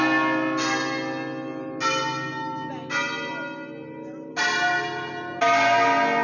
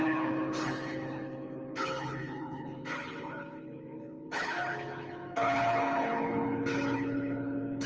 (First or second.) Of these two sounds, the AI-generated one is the second